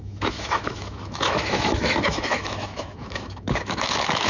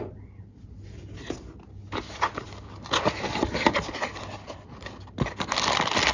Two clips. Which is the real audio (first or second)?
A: second